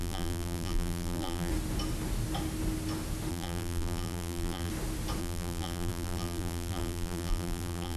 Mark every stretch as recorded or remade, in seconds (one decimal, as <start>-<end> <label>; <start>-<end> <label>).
0.0-1.5 remade; 1.5-3.3 recorded; 3.3-4.7 remade; 4.7-5.2 recorded; 5.2-8.0 remade